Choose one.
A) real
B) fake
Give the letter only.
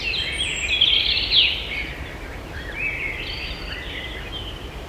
A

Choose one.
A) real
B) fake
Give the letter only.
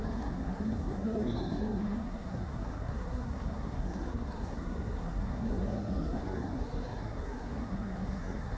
B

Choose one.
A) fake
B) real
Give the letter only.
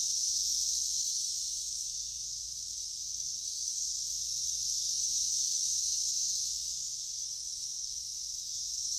A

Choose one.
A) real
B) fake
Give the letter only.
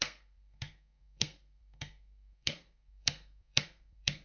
B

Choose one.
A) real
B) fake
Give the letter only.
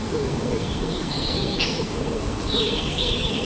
B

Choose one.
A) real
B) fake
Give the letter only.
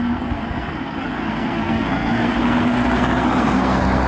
B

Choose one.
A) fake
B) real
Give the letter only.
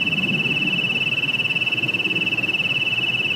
B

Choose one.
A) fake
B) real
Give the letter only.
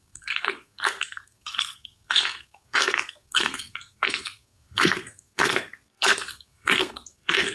A